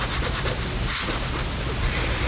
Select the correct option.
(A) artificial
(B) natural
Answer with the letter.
B